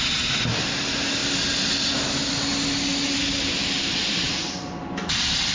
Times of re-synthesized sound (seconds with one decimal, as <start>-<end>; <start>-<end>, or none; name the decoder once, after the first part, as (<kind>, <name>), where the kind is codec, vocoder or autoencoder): none

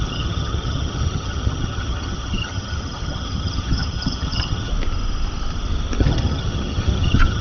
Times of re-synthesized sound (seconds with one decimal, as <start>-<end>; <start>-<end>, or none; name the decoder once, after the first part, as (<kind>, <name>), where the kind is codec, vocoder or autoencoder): 0.0-4.7 (vocoder, HiFi-GAN); 6.0-7.4